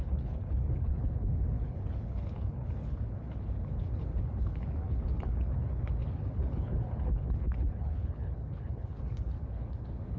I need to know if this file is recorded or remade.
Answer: remade